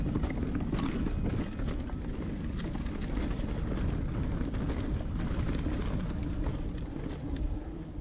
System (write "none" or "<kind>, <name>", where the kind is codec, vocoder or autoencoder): none